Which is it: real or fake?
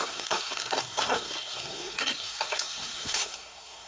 fake